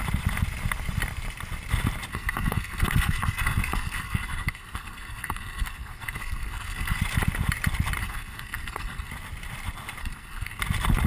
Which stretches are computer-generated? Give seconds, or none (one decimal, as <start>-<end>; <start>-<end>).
2.1-7.0; 8.0-9.1; 10.0-10.6